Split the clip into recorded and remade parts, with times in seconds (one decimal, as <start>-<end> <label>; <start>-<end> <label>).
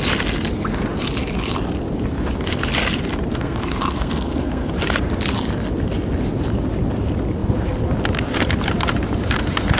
0.0-3.3 recorded; 3.3-4.7 remade; 4.7-9.8 recorded